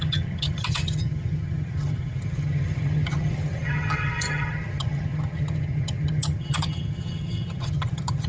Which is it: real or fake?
fake